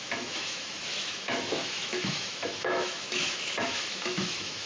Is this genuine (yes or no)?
no